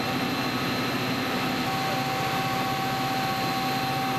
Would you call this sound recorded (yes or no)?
yes